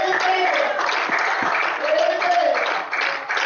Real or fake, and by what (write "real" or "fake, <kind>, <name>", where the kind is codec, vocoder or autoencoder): real